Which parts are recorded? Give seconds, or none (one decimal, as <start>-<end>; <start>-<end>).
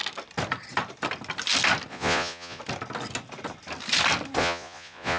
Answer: 0.0-1.9; 2.6-4.4